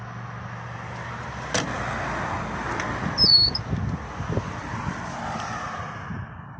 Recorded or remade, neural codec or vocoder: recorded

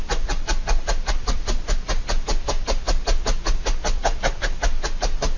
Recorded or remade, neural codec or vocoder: recorded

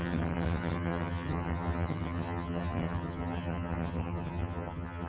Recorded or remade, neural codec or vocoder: remade, vocoder, HiFi-GAN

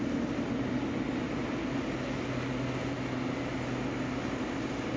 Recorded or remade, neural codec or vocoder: recorded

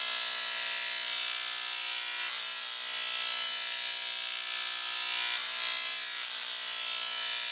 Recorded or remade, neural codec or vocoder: recorded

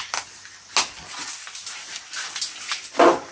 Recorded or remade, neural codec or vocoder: recorded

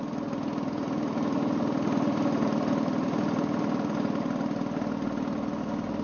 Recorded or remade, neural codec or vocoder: recorded